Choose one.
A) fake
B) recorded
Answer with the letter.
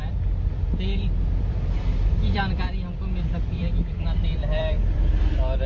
A